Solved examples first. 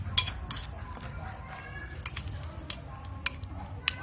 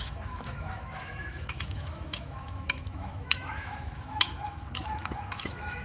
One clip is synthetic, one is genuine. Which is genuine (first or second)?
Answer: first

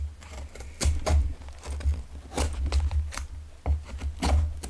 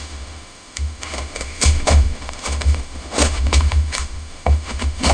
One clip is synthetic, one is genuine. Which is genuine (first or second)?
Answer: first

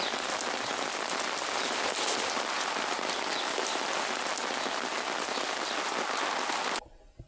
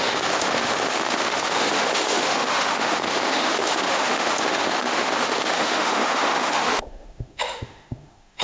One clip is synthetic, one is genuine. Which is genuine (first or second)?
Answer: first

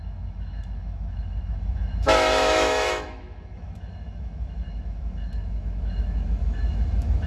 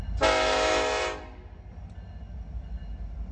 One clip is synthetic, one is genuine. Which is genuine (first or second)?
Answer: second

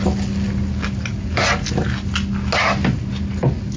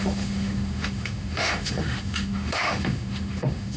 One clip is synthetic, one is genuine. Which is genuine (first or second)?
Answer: first